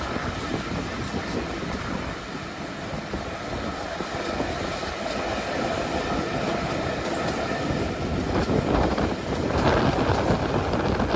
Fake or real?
real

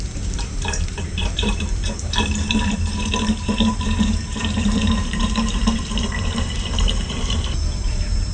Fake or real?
fake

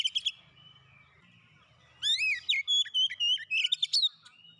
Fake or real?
real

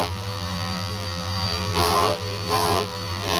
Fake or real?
fake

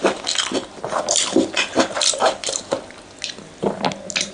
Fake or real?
real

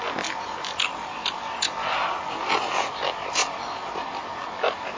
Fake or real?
real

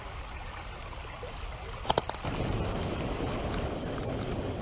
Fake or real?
real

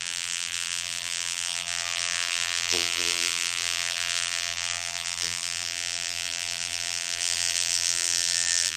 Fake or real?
fake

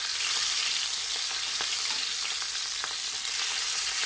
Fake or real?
fake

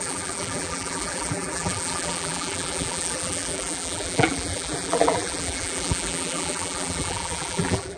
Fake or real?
fake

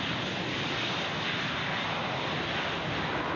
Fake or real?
real